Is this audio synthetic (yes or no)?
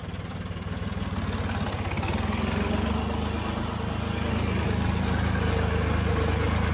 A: no